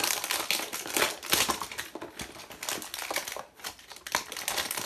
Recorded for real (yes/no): yes